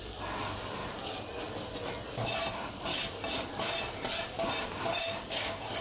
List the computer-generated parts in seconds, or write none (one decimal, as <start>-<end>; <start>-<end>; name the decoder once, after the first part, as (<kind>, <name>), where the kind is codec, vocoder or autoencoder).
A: 4.9-5.8 (codec, DAC)

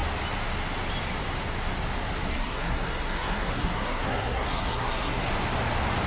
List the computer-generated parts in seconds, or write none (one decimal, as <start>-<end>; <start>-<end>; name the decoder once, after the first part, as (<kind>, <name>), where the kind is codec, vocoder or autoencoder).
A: 2.3-5.3 (codec, SNAC)